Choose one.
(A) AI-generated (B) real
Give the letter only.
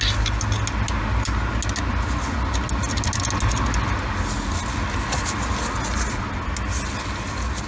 B